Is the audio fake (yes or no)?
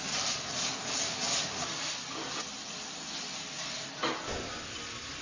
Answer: no